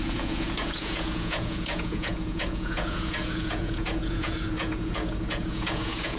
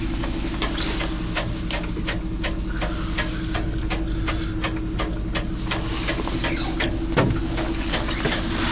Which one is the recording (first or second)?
second